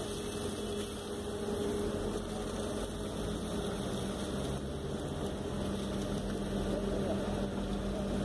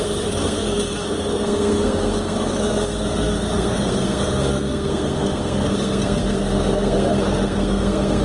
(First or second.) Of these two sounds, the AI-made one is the second